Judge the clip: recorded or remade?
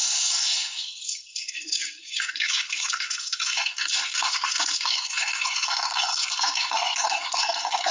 remade